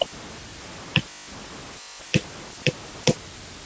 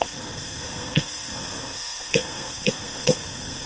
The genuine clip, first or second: first